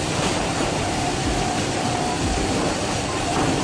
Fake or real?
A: fake